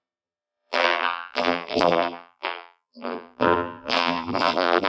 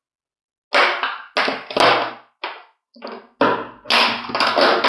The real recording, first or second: second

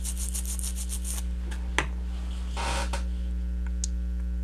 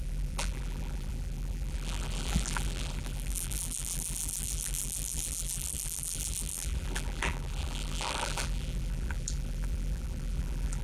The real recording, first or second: first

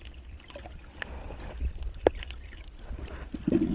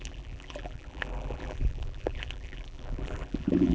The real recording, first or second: first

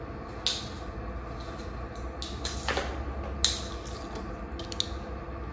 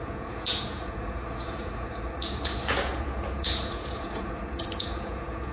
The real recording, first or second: first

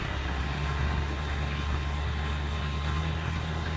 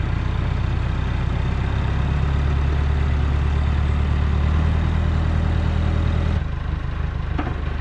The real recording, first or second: second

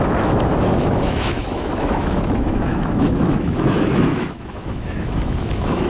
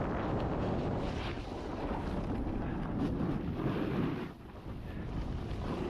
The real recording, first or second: second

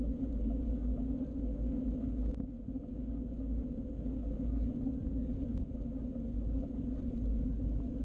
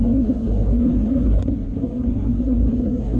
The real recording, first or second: first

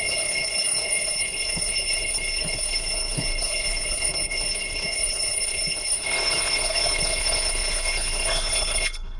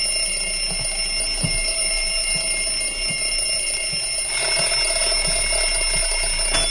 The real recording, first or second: second